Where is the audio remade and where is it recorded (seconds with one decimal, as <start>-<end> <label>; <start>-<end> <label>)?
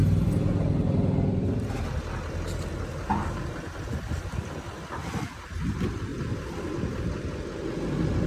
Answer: 0.0-8.3 recorded